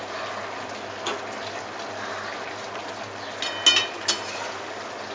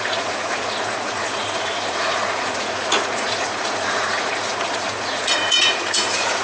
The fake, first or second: second